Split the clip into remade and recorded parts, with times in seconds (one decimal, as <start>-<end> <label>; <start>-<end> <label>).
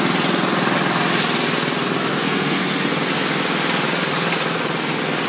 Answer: 0.0-2.1 recorded; 2.1-2.9 remade; 2.9-5.3 recorded